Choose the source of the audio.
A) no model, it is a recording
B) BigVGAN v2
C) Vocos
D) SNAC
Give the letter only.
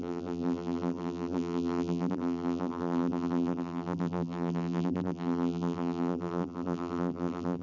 B